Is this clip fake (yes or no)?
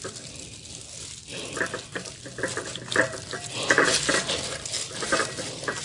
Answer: no